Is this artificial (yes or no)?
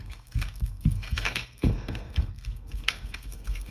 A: yes